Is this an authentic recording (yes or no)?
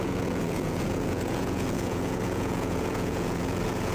no